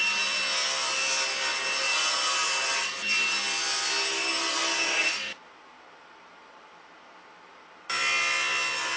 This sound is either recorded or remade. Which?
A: recorded